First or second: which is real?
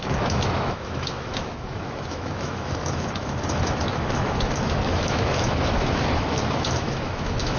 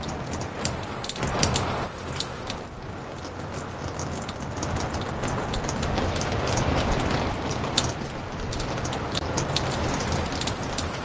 second